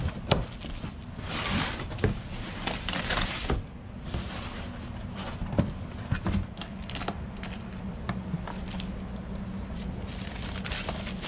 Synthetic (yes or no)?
no